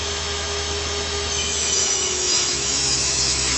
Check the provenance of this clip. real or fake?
fake